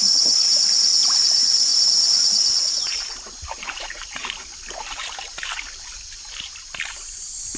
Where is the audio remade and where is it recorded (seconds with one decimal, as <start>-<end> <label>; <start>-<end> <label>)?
0.0-1.7 remade; 1.7-2.7 recorded; 2.7-4.2 remade; 4.2-4.8 recorded; 4.8-7.6 remade